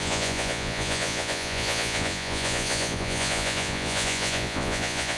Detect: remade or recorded remade